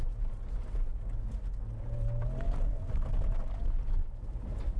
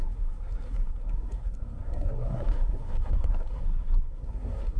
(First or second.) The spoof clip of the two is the second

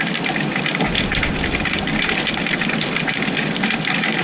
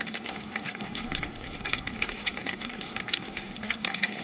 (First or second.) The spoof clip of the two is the second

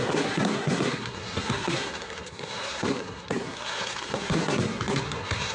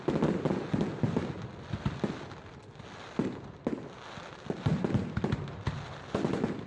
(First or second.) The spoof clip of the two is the first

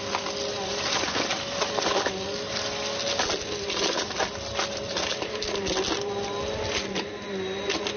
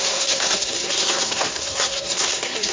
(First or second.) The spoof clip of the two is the second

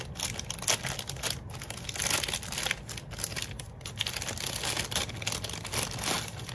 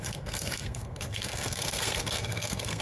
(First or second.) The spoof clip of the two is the second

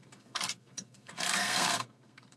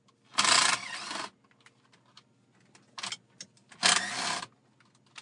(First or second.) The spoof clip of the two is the first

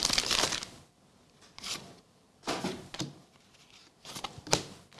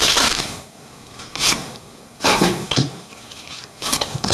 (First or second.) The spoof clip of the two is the second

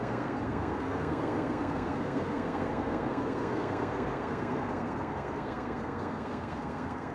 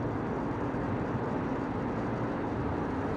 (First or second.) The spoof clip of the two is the first